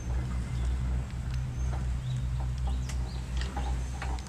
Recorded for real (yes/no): yes